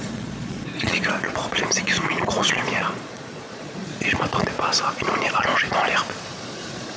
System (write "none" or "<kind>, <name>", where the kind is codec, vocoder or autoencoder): vocoder, Vocos